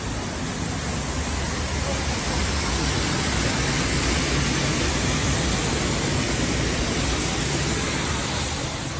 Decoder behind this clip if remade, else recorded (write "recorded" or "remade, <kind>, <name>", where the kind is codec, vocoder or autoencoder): recorded